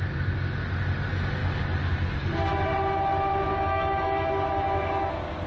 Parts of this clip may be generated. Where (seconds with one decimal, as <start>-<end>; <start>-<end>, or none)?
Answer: 3.5-4.3